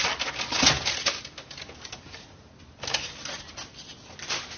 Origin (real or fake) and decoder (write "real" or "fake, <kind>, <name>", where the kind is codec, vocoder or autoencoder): real